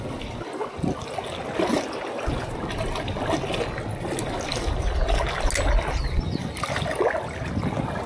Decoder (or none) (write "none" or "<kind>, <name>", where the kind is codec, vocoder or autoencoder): none